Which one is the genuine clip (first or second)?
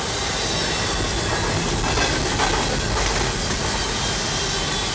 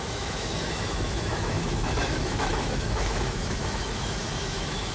first